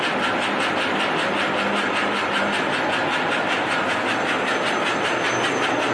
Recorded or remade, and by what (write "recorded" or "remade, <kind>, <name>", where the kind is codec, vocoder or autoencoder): recorded